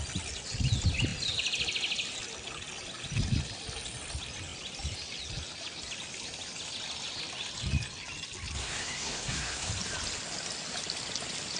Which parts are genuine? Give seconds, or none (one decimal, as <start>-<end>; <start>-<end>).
0.0-8.6; 9.7-11.6